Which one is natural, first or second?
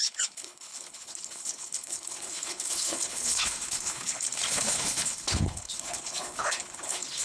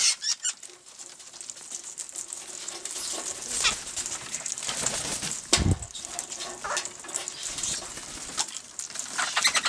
second